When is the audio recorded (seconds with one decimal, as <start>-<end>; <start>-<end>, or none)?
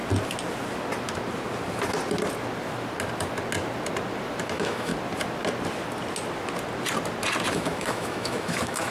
0.0-4.4; 4.9-7.5